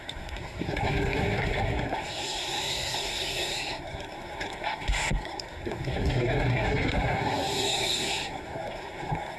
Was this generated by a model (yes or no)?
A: yes